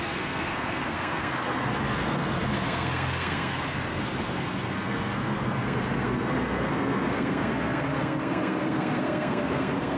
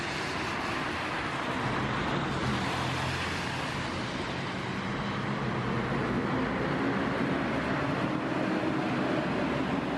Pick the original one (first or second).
second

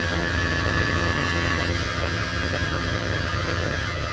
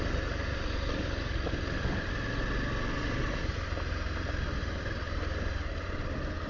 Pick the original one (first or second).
second